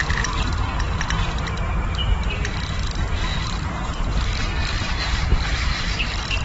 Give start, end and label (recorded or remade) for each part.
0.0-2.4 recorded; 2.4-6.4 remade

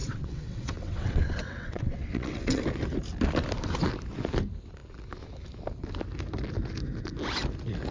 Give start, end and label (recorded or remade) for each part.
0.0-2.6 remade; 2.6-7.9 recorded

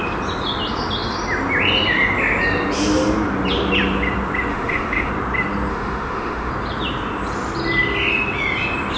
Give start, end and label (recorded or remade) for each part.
0.0-4.5 recorded; 4.5-5.1 remade; 5.1-5.7 recorded; 5.7-6.5 remade; 6.5-9.0 recorded